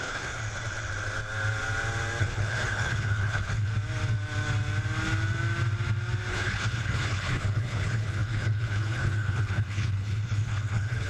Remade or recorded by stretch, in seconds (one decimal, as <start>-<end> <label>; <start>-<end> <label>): 0.0-0.4 remade; 0.4-2.2 recorded; 2.2-3.7 remade; 3.7-6.3 recorded; 6.3-11.1 remade